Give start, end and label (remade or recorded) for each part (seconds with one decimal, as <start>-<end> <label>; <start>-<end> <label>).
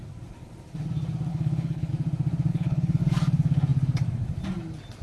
0.0-1.3 recorded; 1.3-1.9 remade; 1.9-2.5 recorded; 2.5-3.0 remade; 3.0-5.0 recorded